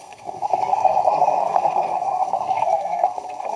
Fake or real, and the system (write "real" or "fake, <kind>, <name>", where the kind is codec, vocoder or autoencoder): fake, codec, SNAC